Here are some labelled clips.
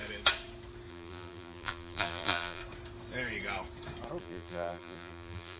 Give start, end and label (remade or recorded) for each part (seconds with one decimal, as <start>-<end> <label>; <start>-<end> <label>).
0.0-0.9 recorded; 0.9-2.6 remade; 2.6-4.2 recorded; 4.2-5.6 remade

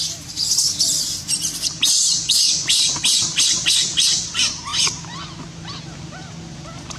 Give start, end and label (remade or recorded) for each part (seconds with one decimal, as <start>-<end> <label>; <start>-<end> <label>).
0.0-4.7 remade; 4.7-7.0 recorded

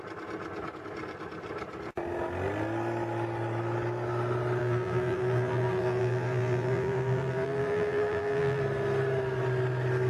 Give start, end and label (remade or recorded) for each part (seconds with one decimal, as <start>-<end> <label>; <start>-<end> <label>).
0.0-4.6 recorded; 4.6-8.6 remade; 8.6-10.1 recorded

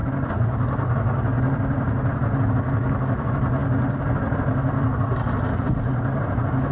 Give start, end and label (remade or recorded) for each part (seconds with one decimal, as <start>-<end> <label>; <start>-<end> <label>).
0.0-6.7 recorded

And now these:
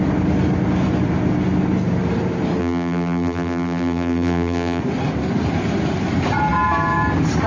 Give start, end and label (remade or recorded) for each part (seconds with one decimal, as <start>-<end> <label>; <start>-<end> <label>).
0.0-2.6 recorded; 2.6-4.8 remade; 4.8-7.5 recorded

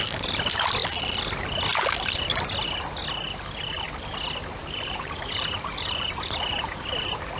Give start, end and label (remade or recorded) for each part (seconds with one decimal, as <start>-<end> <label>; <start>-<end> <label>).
0.0-4.6 recorded; 4.6-6.8 remade; 6.8-7.4 recorded